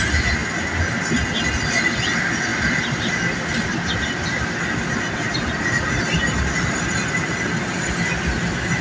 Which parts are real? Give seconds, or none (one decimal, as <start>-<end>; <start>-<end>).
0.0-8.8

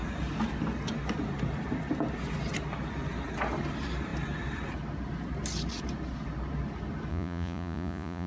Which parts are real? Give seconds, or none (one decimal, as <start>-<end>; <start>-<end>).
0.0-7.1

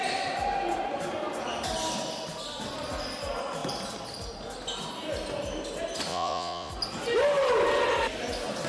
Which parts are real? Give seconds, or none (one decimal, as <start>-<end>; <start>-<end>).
0.0-6.1; 6.7-8.7

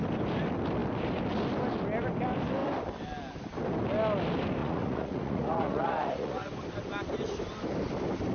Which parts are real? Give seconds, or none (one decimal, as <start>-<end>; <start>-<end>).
0.0-4.6; 6.5-8.3

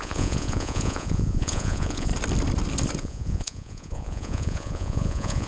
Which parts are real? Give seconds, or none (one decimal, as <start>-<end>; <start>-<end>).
2.1-3.0

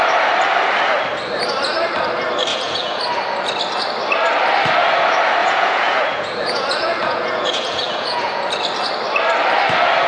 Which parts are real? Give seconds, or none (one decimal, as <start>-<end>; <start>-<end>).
0.0-2.5; 3.0-5.4; 8.5-10.1

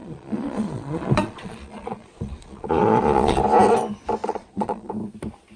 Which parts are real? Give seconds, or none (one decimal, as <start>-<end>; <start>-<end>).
3.4-4.2; 4.9-5.6